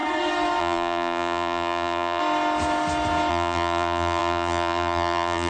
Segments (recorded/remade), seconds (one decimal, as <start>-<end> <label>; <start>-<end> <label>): 0.0-0.6 recorded; 0.6-2.2 remade; 2.2-3.3 recorded; 3.3-5.5 remade